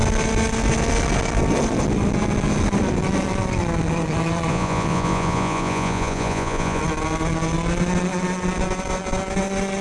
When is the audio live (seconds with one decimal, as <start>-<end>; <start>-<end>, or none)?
0.0-4.5; 6.8-9.8